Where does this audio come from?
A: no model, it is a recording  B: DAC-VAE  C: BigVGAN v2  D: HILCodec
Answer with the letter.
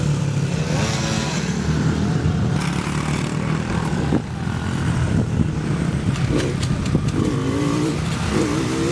A